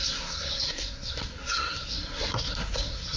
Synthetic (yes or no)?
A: yes